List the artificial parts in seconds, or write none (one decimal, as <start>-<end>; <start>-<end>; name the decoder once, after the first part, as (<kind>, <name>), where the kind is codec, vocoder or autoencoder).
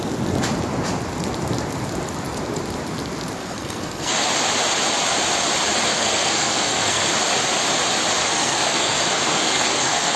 3.4-4.1 (codec, SNAC); 5.9-7.1; 8.2-10.2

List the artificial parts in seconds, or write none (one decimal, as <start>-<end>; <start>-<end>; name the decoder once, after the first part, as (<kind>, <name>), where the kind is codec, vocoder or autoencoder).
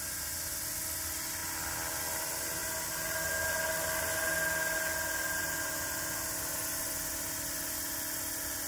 none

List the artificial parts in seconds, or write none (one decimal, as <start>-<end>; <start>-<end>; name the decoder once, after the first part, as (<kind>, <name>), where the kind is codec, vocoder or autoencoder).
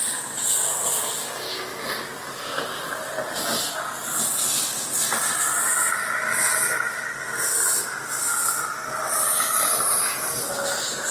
none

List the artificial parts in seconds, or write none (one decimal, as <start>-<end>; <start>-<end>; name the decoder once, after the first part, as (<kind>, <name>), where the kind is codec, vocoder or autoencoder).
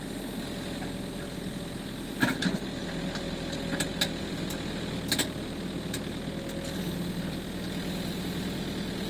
none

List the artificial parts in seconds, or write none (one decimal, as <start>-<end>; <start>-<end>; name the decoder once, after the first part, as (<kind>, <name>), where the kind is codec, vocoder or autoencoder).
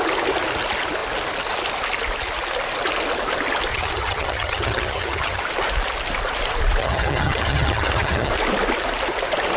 3.7-5.4 (vocoder, HiFi-GAN); 6.8-8.3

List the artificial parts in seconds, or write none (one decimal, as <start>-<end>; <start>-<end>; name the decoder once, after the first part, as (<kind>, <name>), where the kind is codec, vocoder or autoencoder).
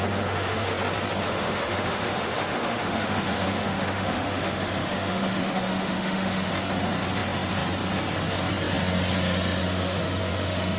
0.0-0.7 (autoencoder, DAC-VAE); 1.2-6.5; 9.6-10.8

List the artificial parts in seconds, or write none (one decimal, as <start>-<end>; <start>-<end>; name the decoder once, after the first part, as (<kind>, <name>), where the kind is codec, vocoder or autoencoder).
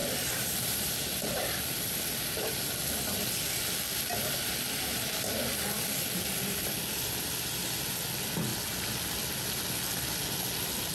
0.0-3.2 (vocoder, BigVGAN v2)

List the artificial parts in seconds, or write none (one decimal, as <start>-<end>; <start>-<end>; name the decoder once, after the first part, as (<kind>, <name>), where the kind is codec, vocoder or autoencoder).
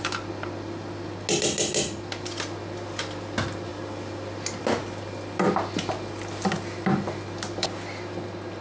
none